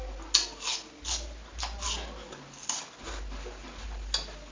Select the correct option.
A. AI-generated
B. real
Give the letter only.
B